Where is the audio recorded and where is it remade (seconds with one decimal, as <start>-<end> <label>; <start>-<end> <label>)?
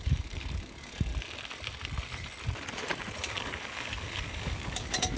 0.0-1.1 remade; 1.1-3.2 recorded; 3.2-5.2 remade